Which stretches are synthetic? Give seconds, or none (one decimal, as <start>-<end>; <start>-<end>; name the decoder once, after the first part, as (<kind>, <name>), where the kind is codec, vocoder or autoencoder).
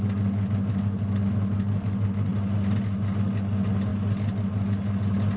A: none